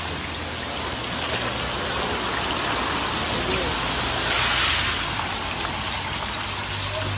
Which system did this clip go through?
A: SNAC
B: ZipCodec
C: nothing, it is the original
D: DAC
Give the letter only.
C